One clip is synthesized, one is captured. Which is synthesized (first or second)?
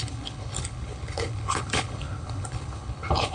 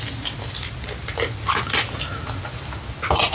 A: first